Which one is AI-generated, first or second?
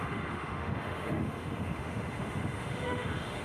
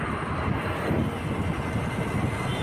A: first